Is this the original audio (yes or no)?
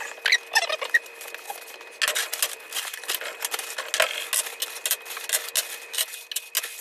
yes